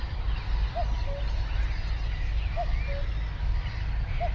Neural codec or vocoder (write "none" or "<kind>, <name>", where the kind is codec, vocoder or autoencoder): none